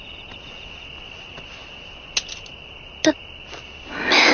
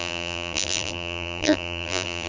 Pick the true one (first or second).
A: first